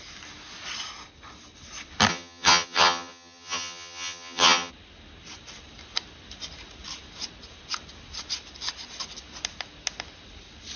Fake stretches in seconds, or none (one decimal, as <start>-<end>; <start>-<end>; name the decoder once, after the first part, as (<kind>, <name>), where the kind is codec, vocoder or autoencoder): 2.1-4.7 (vocoder, HiFi-GAN)

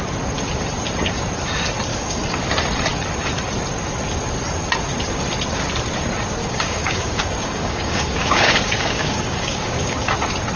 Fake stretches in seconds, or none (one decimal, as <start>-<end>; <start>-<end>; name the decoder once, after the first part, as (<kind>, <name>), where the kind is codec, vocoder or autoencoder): 1.9-2.5 (codec, DAC); 6.4-10.2

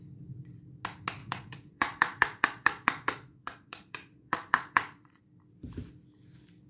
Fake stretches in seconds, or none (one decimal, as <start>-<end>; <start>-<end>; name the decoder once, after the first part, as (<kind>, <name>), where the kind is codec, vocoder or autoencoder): 1.2-5.2 (vocoder, Vocos)

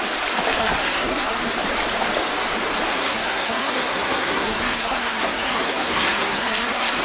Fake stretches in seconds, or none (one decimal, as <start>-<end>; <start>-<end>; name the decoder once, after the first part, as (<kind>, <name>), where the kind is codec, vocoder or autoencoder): 0.6-1.4 (codec, SNAC); 2.9-7.0